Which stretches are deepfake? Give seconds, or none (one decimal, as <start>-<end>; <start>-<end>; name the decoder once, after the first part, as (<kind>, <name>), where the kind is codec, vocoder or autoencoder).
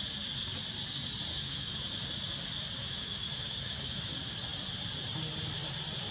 1.3-1.8 (autoencoder, DAC-VAE); 2.8-4.1